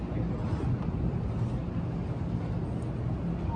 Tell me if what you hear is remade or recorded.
recorded